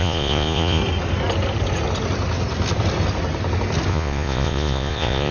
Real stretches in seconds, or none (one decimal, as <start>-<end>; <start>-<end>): 0.8-3.9